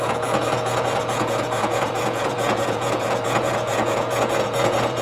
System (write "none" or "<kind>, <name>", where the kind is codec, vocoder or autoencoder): vocoder, Vocos